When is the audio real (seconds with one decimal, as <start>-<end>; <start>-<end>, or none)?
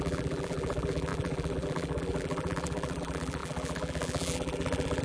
none